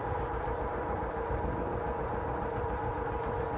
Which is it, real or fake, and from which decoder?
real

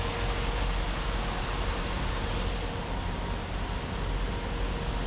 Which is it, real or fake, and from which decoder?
real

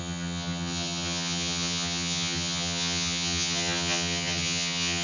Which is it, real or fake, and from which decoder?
fake, vocoder, HiFi-GAN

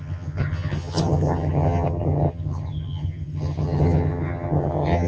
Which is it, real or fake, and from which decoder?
fake, vocoder, HiFi-GAN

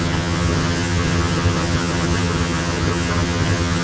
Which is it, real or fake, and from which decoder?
fake, vocoder, HiFi-GAN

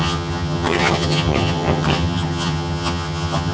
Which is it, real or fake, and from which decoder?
fake, vocoder, HiFi-GAN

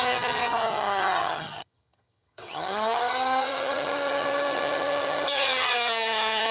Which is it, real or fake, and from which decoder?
fake, vocoder, HiFi-GAN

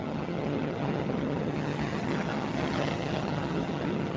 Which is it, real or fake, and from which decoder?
fake, vocoder, HiFi-GAN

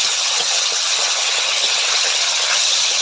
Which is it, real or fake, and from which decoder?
fake, vocoder, HiFi-GAN